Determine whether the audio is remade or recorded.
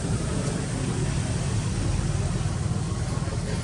recorded